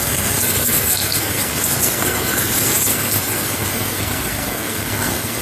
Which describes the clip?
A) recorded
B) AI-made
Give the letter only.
B